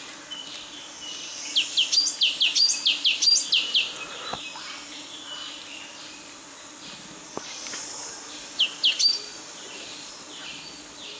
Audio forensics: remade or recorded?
recorded